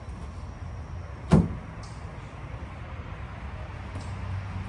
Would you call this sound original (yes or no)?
yes